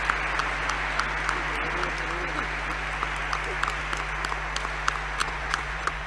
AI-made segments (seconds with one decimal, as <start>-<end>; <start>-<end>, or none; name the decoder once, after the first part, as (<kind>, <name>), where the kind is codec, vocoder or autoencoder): 5.2-6.1 (vocoder, Vocos)